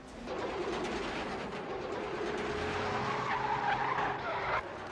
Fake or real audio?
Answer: real